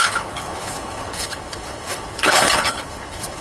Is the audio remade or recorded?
remade